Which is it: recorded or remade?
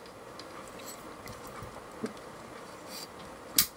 recorded